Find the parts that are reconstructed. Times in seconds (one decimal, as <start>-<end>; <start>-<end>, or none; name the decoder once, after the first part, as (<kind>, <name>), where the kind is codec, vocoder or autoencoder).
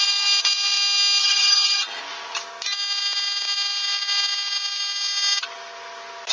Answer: 1.2-2.0 (vocoder, HiFi-GAN)